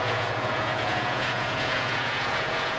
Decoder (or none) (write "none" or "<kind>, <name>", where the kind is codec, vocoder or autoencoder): vocoder, Vocos